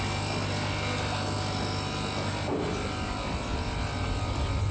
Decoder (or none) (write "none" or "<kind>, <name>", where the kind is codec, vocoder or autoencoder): none